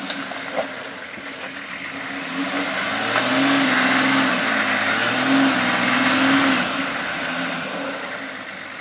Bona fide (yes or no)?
yes